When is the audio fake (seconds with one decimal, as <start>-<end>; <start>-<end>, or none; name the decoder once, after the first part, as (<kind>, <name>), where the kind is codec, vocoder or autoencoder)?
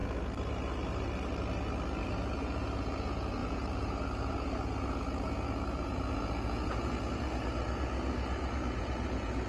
2.0-9.5 (vocoder, Vocos)